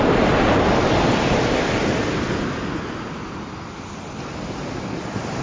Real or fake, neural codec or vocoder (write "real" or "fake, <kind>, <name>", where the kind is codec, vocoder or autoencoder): real